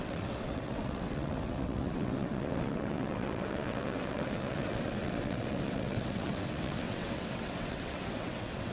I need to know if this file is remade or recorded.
remade